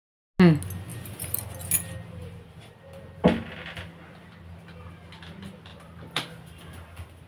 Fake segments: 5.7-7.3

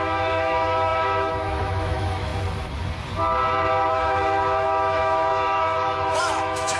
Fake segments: 0.0-2.3; 3.9-6.8